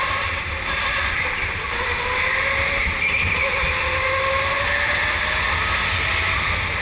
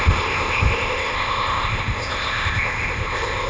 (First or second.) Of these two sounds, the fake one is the second